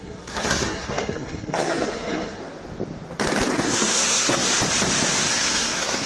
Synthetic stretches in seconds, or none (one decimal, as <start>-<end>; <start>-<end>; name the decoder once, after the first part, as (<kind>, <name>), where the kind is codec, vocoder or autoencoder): 0.0-2.4 (codec, SNAC); 3.5-4.5; 5.3-6.1